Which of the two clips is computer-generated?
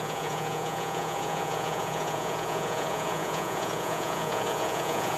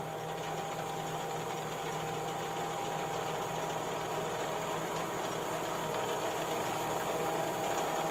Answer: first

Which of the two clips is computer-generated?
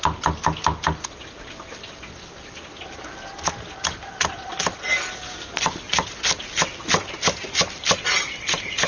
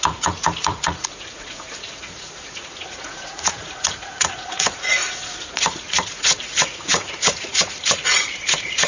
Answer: second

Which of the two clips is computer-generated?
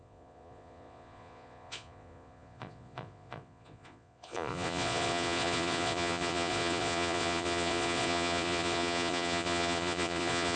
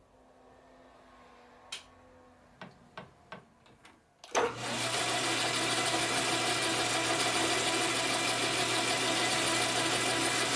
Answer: first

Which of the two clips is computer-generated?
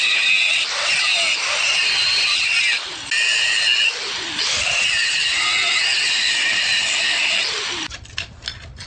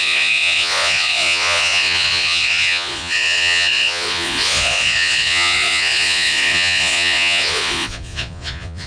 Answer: second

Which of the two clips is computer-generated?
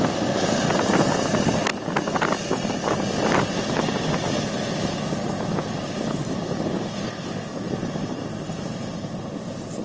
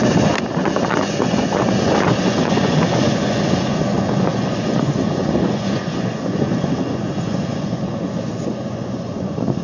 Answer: second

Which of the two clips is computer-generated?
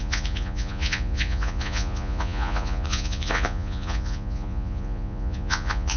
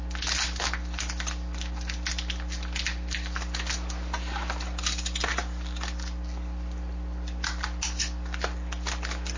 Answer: first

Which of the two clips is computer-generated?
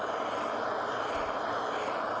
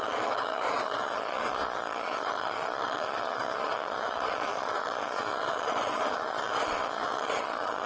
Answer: second